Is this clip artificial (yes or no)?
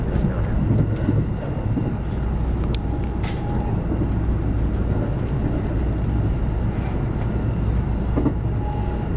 no